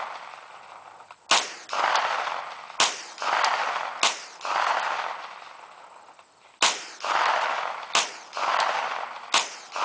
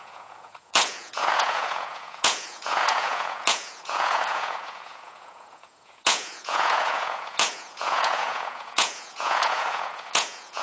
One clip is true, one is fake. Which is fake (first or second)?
second